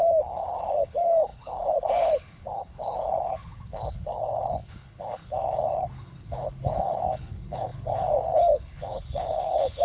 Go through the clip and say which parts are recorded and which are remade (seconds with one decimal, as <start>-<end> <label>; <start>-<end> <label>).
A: 0.0-9.8 remade